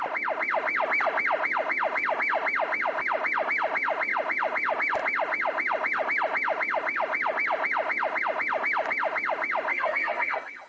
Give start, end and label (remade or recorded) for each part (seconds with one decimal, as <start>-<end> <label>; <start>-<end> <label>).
0.0-9.7 recorded; 9.7-10.7 remade